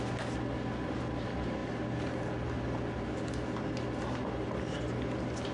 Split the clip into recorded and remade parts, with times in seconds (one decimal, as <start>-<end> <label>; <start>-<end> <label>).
0.0-5.5 recorded